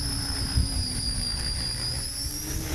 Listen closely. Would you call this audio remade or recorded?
remade